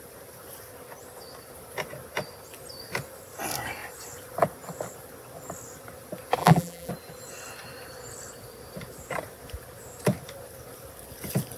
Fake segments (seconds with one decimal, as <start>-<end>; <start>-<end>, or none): 6.4-6.9